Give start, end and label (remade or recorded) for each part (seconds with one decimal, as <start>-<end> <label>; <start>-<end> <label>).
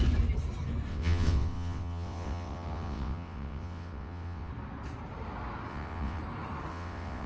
0.0-0.9 recorded; 0.9-4.5 remade; 4.5-5.7 recorded; 5.7-6.2 remade; 6.2-6.7 recorded; 6.7-7.3 remade